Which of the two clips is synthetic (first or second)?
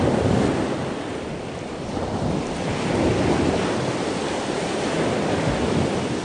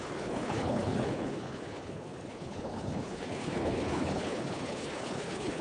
second